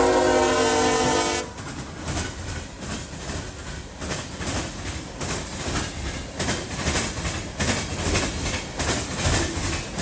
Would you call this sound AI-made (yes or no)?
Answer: no